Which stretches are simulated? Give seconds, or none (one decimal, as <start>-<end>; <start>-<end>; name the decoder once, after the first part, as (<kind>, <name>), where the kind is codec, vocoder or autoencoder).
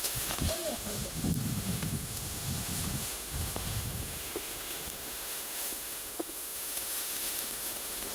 0.0-8.1 (autoencoder, DAC-VAE)